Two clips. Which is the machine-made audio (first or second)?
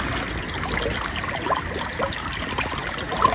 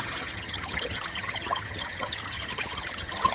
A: second